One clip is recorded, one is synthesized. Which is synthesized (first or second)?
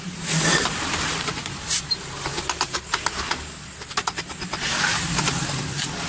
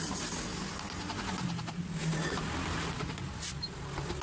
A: first